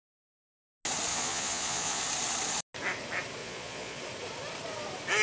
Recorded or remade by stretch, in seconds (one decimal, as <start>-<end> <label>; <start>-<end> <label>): 0.0-1.1 recorded; 1.1-2.0 remade; 2.0-3.4 recorded; 3.4-4.0 remade; 4.0-5.2 recorded